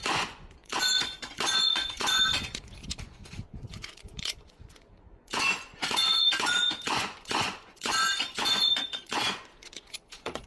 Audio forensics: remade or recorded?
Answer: remade